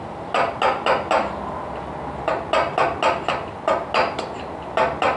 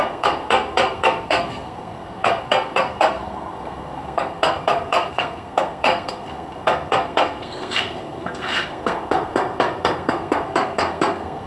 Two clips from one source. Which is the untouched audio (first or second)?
first